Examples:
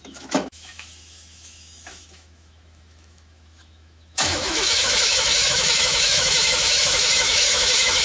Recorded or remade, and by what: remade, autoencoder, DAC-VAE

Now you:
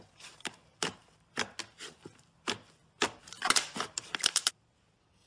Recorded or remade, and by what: recorded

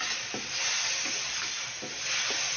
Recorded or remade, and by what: recorded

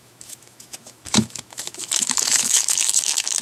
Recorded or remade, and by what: remade, autoencoder, DAC-VAE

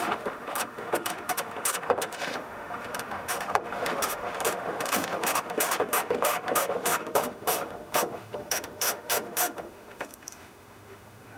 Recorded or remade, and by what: remade, autoencoder, DAC-VAE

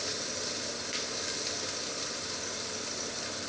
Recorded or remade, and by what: recorded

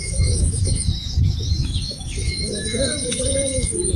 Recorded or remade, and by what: remade, autoencoder, DAC-VAE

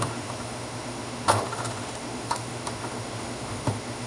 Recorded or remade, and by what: remade, autoencoder, DAC-VAE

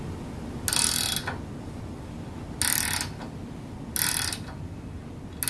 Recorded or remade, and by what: recorded